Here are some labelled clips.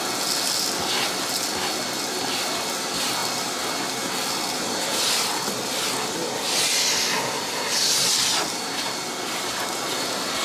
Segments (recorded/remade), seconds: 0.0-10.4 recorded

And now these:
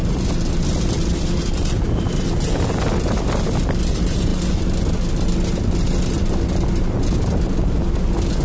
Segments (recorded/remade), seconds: 0.0-8.4 recorded

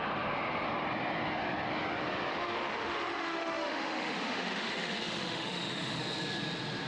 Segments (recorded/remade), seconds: 0.0-2.3 recorded; 2.3-6.0 remade; 6.0-6.9 recorded

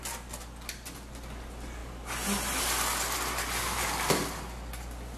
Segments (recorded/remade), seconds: 0.0-5.2 recorded

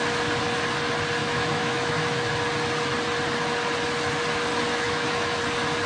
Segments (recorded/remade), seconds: 0.0-1.2 recorded; 1.2-2.3 remade; 2.3-4.7 recorded; 4.7-5.4 remade; 5.4-5.9 recorded

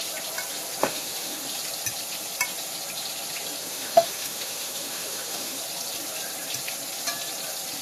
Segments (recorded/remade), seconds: 0.0-0.8 recorded; 0.8-1.4 remade; 1.4-3.6 recorded; 3.6-5.6 remade; 5.6-7.8 recorded

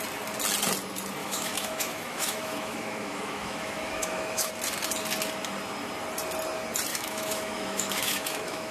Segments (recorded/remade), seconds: 0.0-1.2 recorded; 1.2-4.5 remade; 4.5-6.9 recorded; 6.9-8.7 remade

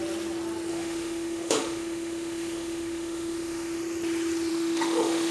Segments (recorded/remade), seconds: 0.0-0.7 recorded; 0.7-3.8 remade; 3.8-4.5 recorded; 4.5-5.3 remade